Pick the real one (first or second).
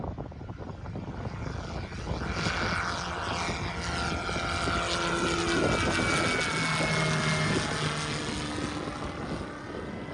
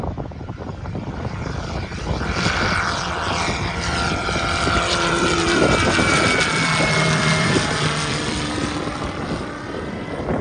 first